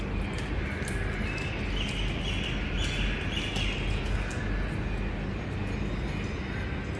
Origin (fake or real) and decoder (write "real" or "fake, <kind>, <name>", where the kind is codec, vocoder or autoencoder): real